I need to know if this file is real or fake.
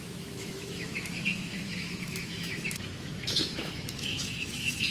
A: fake